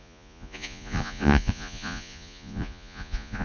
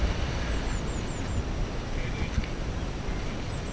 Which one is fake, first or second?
first